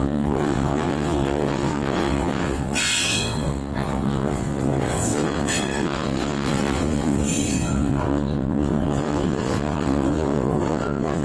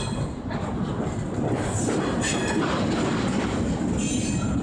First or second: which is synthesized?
first